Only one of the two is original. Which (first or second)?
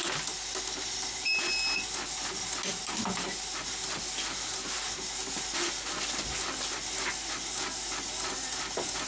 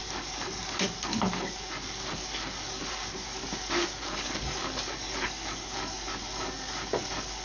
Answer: first